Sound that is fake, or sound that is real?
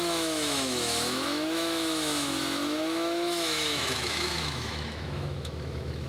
fake